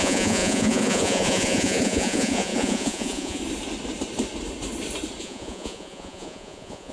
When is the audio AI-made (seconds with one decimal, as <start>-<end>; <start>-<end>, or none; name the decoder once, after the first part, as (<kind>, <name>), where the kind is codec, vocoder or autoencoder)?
0.0-3.4 (vocoder, Vocos); 5.2-6.9